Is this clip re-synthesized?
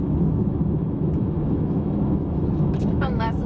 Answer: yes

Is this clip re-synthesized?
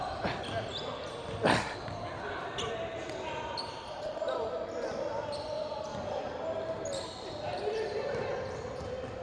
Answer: no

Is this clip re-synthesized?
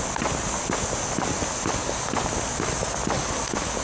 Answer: no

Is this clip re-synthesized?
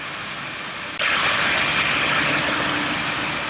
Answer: no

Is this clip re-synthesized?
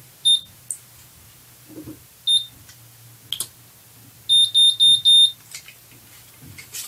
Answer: no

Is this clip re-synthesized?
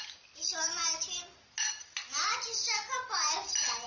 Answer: no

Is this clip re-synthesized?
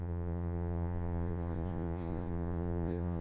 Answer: yes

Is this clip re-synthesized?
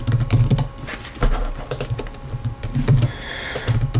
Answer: no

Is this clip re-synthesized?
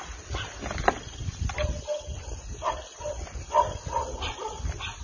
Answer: no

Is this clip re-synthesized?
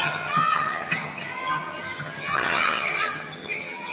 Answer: yes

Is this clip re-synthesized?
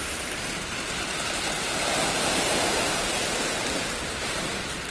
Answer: yes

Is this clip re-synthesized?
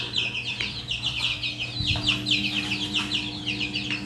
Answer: no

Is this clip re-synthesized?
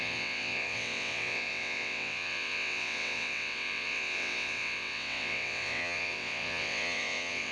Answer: yes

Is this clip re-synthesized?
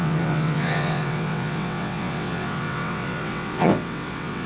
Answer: yes